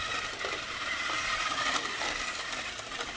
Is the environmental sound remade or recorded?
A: remade